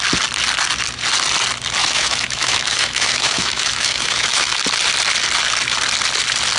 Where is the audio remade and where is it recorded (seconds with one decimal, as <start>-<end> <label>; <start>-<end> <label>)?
0.0-1.8 recorded; 1.8-4.6 remade; 4.6-6.6 recorded

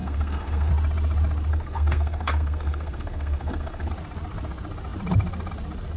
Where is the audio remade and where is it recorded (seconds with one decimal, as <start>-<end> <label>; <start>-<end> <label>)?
0.0-0.7 remade; 0.7-1.5 recorded; 1.5-3.9 remade; 3.9-6.0 recorded

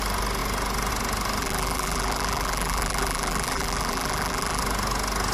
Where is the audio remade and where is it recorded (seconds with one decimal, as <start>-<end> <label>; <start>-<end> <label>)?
0.0-1.4 recorded; 1.4-4.6 remade; 4.6-5.3 recorded

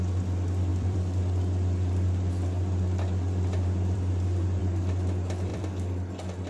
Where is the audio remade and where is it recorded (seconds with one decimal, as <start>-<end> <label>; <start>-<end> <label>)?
0.0-0.7 recorded; 0.7-4.6 remade; 4.6-5.5 recorded; 5.5-6.1 remade; 6.1-6.5 recorded